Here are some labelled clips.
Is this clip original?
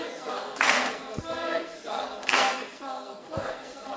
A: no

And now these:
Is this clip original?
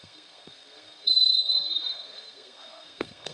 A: no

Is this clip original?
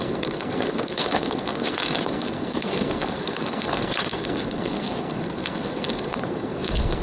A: no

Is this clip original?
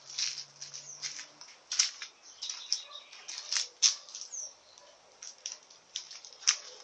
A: yes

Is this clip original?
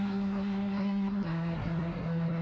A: no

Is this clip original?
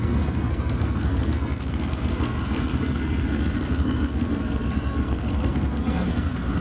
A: no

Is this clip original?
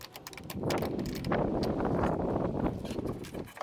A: yes